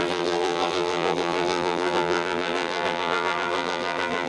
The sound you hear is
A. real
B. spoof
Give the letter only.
B